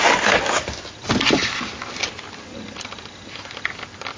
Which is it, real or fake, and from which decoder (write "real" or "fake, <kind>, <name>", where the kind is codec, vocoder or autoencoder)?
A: real